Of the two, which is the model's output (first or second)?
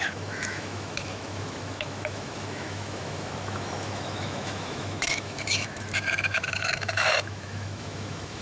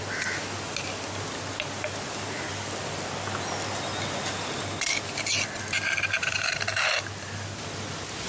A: first